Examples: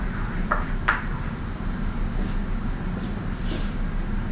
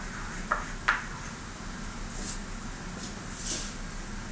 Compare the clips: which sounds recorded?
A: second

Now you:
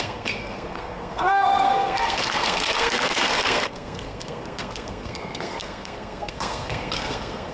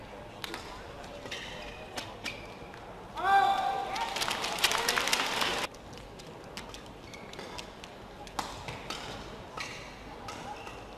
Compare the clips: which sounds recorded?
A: second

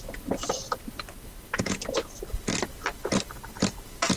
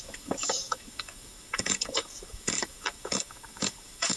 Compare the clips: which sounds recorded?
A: first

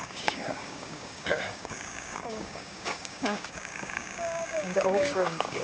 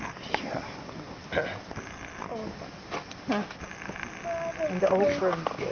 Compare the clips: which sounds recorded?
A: second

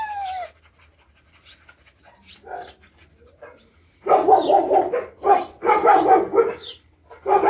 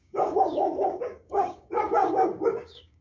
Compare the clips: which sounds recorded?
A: first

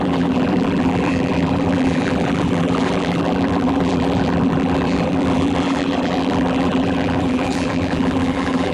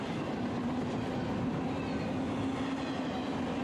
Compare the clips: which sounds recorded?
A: second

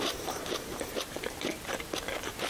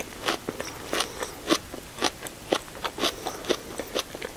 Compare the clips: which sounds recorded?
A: second